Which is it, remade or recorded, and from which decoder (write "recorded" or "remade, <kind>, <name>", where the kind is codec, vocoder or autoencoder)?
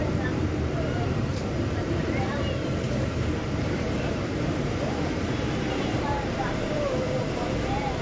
remade, vocoder, BigVGAN v2